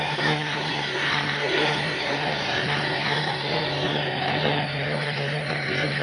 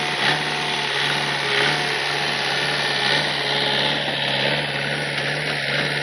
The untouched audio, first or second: second